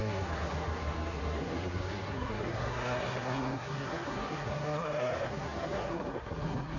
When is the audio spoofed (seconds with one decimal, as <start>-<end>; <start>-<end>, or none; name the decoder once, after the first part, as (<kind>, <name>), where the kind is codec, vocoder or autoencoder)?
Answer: 0.0-6.8 (codec, SNAC)